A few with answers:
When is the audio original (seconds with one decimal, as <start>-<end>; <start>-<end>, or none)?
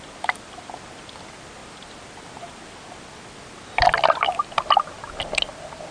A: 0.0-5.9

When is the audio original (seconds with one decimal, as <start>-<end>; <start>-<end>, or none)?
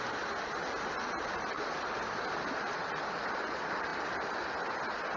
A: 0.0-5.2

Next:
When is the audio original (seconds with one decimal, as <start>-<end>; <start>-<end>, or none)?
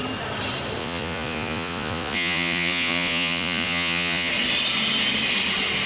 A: 0.0-0.8; 4.3-5.9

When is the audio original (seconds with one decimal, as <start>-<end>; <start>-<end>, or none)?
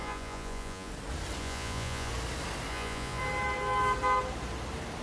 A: 0.9-1.4; 2.1-2.7; 3.2-5.0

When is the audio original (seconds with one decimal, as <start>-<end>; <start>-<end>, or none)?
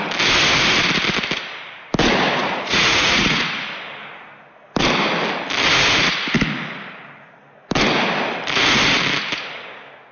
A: 0.0-2.4; 3.4-10.1